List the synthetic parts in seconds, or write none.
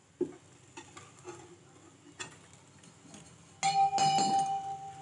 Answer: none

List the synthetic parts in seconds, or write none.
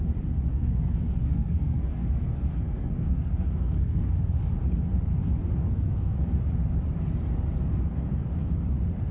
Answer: 0.5-4.2 (codec, SNAC); 5.6-6.2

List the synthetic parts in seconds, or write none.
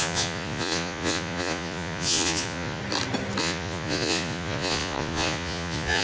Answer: 0.0-2.8 (vocoder, Vocos); 3.4-6.0